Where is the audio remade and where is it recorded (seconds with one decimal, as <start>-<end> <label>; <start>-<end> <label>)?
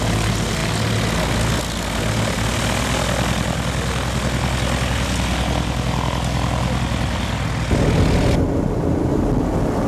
0.0-9.9 recorded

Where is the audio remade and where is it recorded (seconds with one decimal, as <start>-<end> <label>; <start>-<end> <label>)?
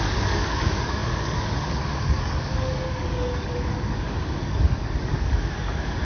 0.0-6.0 remade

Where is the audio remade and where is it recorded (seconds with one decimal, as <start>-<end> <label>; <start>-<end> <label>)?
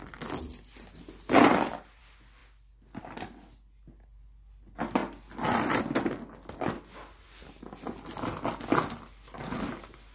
0.0-10.1 recorded